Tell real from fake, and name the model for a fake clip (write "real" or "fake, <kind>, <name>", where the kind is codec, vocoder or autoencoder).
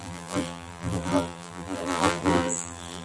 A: fake, vocoder, BigVGAN v2